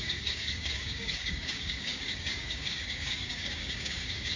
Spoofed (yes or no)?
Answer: yes